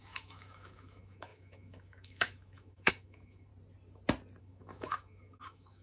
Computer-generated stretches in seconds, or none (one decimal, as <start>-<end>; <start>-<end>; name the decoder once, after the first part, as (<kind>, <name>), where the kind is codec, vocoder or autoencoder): 0.0-3.5 (autoencoder, DAC-VAE); 4.4-5.8